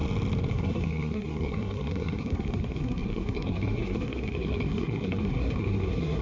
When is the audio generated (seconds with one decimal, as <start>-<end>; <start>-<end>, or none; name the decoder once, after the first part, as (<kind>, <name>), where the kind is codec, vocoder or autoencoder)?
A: 0.5-6.2 (codec, SNAC)